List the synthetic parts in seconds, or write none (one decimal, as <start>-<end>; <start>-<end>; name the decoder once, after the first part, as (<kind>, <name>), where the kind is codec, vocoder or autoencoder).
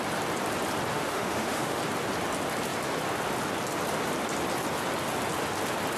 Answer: 0.9-1.8 (autoencoder, DAC-VAE)